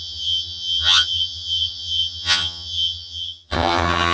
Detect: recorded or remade remade